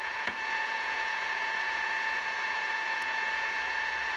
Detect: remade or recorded remade